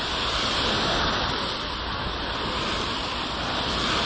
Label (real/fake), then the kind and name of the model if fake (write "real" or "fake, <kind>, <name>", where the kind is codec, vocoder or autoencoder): real